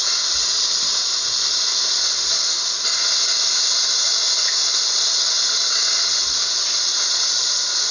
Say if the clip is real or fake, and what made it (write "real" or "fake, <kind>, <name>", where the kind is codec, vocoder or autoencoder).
real